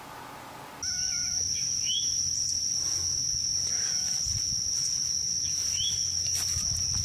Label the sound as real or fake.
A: real